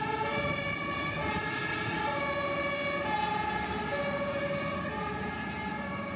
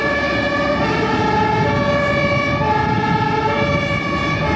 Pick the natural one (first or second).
second